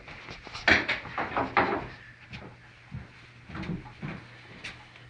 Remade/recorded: recorded